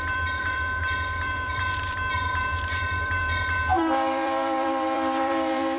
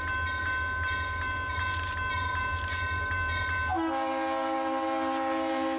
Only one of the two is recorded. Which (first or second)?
second